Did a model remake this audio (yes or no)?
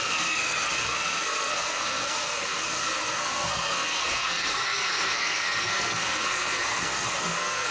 yes